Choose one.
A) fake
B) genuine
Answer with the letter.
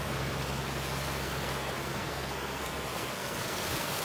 A